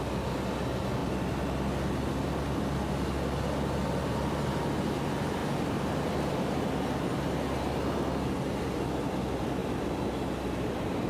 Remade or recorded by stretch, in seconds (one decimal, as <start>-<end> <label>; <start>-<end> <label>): 0.0-5.4 recorded; 5.4-6.6 remade; 6.6-11.1 recorded